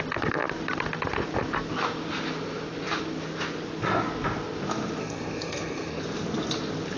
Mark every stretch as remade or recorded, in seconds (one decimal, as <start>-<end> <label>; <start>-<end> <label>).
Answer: 0.0-5.0 recorded; 5.0-6.0 remade; 6.0-7.0 recorded